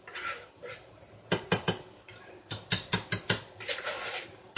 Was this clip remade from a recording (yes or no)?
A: yes